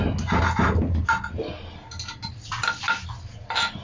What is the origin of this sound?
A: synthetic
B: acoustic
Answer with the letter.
B